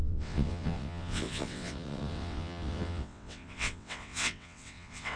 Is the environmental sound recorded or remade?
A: remade